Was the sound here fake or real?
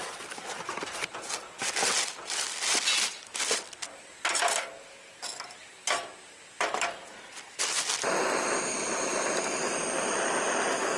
real